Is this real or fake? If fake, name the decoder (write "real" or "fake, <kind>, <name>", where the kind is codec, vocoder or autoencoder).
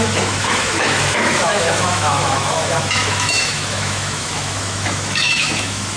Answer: fake, autoencoder, DAC-VAE